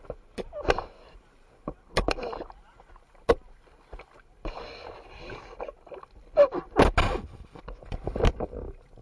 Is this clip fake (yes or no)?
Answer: no